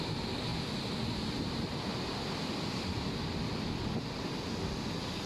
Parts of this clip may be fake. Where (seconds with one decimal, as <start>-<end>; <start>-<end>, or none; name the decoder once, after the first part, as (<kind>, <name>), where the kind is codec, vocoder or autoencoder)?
none